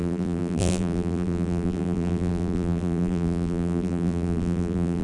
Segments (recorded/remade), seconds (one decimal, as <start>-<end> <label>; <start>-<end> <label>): 0.0-5.0 remade